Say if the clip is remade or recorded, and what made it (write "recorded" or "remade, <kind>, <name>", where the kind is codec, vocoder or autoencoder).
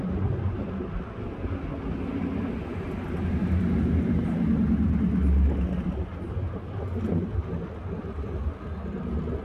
recorded